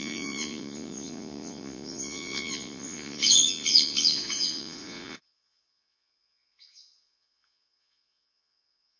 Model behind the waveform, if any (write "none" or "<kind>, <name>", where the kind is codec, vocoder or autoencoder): vocoder, Vocos